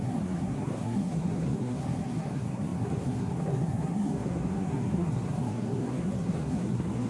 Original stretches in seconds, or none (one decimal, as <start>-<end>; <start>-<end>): none